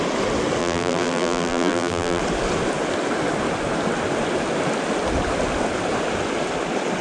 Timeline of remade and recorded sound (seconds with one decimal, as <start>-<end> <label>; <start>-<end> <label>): 0.0-0.6 recorded; 0.6-2.2 remade; 2.2-7.0 recorded